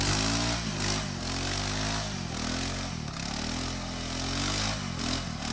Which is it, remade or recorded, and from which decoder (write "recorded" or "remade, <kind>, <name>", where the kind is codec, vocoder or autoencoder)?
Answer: recorded